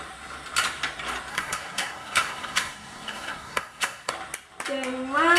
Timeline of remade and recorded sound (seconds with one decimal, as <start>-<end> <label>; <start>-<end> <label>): 0.0-1.3 recorded; 1.3-4.1 remade; 4.1-5.4 recorded